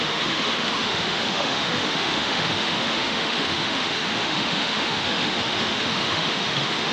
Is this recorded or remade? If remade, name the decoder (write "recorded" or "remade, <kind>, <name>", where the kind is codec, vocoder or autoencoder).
remade, autoencoder, DAC-VAE